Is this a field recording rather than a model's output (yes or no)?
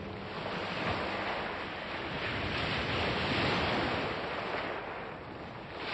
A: yes